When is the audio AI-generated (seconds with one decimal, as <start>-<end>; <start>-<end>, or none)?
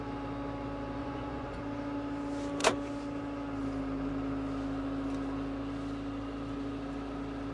1.0-1.6